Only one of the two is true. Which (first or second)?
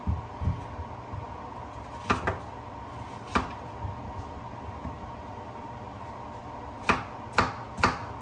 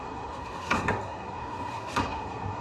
first